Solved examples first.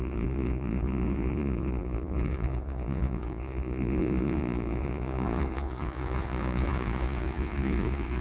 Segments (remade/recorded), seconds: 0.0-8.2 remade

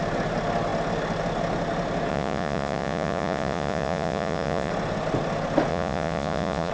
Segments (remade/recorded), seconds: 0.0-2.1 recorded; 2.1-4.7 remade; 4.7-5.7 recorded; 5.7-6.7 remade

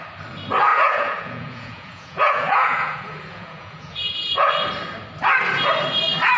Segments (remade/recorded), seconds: 0.0-0.7 recorded; 0.7-4.5 remade; 4.5-6.4 recorded

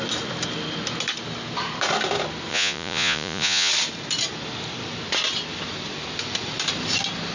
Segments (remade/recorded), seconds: 0.0-2.5 recorded; 2.5-3.7 remade; 3.7-7.3 recorded

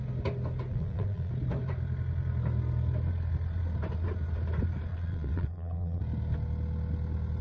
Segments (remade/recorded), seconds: 0.0-0.7 recorded; 0.7-1.3 remade; 1.3-4.9 recorded; 4.9-6.0 remade; 6.0-7.4 recorded

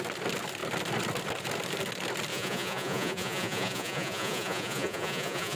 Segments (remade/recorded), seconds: 0.0-2.3 recorded; 2.3-5.6 remade

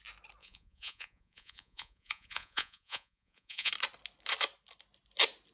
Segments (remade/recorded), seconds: 0.0-0.4 recorded; 0.4-3.7 remade; 3.7-5.5 recorded

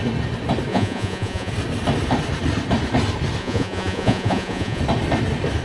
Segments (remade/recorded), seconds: 0.0-0.7 recorded; 0.7-1.5 remade; 1.5-3.4 recorded; 3.4-4.8 remade; 4.8-5.6 recorded